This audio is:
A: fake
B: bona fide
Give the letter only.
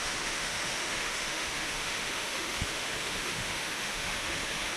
A